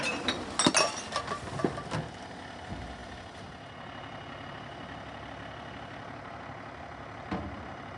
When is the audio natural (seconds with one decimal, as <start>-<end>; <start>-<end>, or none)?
0.0-8.0